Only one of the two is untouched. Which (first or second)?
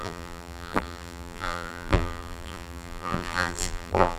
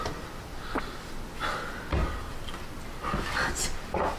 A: second